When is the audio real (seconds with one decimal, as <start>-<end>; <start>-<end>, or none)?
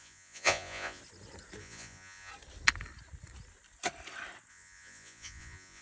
1.0-1.6; 2.3-4.5